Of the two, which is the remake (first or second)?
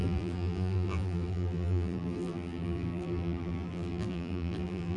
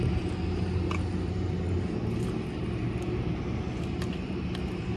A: first